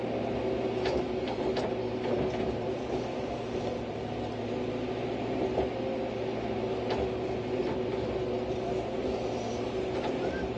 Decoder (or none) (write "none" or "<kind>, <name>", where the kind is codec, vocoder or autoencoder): none